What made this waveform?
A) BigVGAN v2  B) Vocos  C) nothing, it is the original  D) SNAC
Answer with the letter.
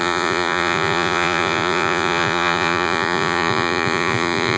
B